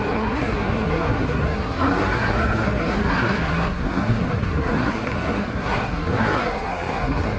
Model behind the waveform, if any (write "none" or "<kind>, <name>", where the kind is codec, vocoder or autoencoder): codec, SNAC